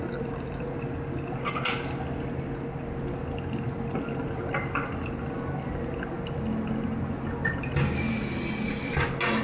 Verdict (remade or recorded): recorded